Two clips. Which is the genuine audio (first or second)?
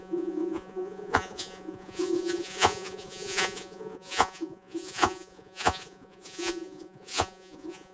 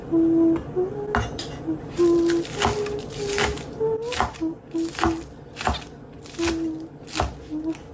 second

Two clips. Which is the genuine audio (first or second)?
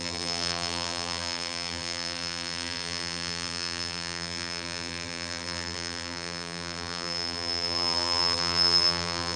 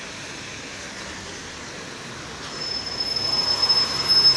second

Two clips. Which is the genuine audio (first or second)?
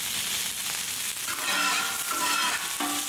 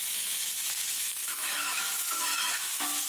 first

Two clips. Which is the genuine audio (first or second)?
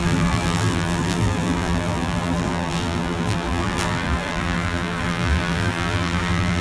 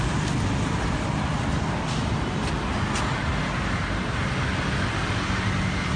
second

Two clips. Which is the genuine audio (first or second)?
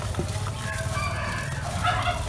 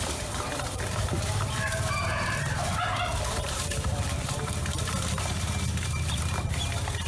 first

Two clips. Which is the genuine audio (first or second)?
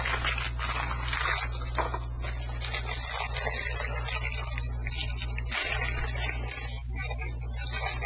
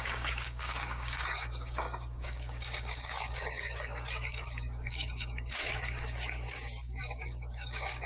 first